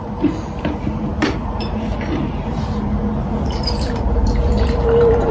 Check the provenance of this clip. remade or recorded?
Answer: remade